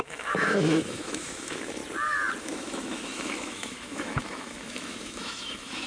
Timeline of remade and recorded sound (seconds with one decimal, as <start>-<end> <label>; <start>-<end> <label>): 0.0-1.8 remade; 1.8-2.4 recorded; 2.4-5.9 remade